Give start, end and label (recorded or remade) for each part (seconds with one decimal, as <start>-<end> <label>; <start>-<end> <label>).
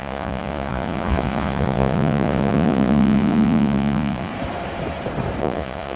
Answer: 0.0-4.3 remade; 4.3-5.4 recorded; 5.4-6.0 remade